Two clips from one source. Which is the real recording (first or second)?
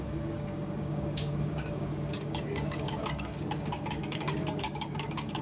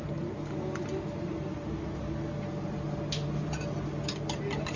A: second